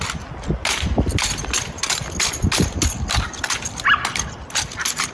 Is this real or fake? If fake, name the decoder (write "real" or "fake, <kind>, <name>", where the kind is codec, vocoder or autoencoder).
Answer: real